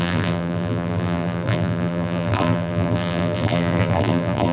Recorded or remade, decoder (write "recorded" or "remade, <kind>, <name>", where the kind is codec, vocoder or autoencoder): remade, vocoder, BigVGAN v2